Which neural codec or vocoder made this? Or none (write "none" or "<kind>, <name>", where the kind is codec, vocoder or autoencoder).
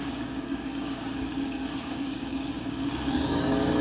codec, DAC